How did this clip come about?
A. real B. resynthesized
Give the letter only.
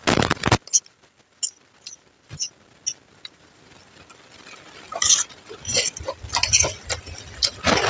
A